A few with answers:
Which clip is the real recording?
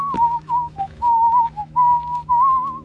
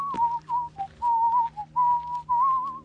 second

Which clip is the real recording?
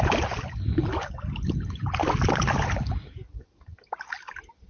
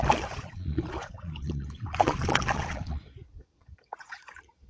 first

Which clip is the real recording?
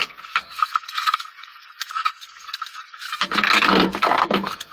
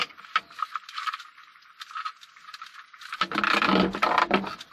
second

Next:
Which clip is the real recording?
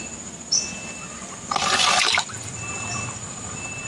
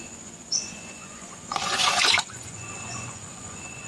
first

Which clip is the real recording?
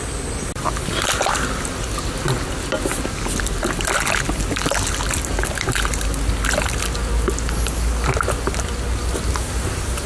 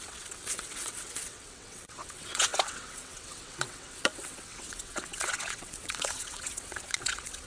first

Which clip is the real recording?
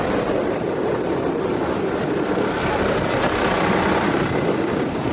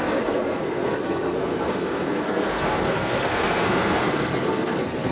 first